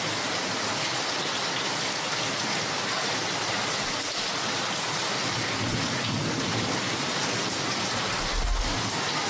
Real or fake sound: real